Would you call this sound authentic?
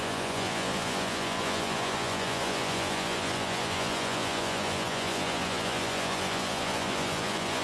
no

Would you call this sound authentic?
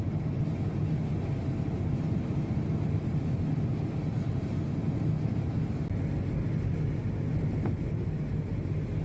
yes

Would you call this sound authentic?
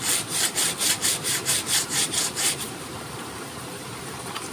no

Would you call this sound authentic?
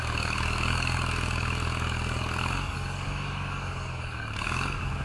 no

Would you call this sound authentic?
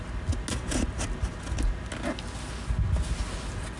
yes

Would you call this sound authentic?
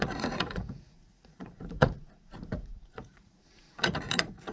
no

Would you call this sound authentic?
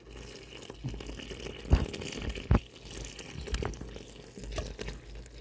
yes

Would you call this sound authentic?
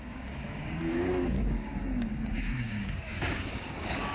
no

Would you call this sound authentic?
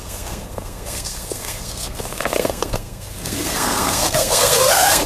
no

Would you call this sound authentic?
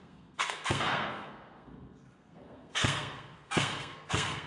no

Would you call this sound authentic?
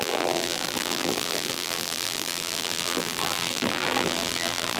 no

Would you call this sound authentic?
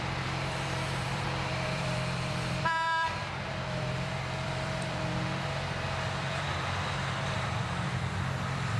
no